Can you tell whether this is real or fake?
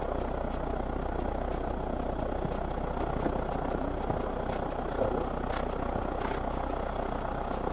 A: real